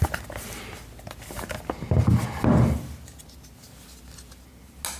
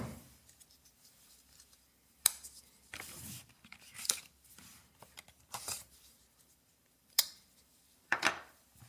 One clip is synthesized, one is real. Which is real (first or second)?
first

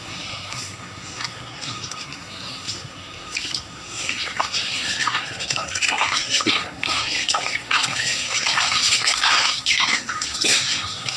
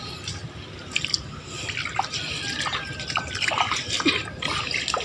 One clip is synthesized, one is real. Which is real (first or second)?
second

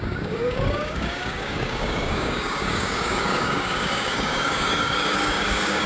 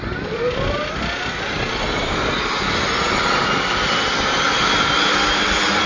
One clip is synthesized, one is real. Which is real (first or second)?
second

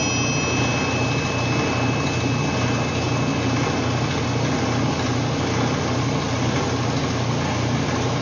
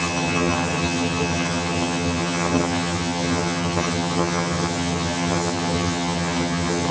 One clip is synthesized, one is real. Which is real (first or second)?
first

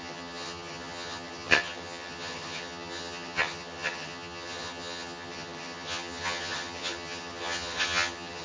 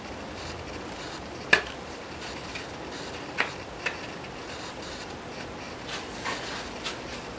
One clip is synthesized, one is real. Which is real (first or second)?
second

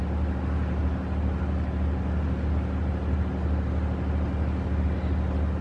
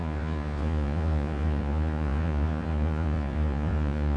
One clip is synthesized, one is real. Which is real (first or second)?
first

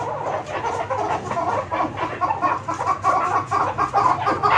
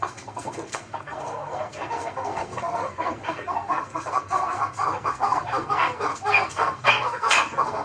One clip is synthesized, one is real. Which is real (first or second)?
first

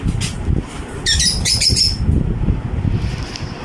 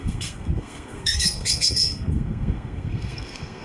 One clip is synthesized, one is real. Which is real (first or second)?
first